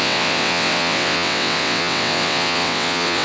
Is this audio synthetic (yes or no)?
yes